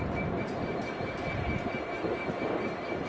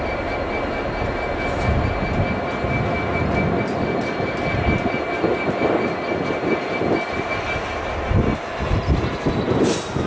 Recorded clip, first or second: second